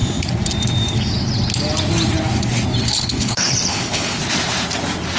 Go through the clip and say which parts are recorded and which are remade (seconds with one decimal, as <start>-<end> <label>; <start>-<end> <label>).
0.0-2.8 recorded; 2.8-4.2 remade; 4.2-5.2 recorded